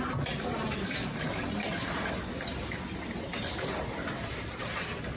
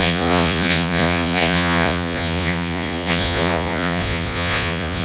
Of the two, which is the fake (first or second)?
second